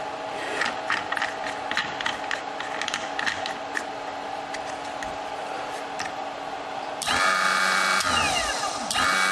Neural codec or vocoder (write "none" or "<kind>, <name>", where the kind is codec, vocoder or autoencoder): none